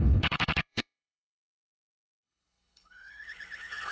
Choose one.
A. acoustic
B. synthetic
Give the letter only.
B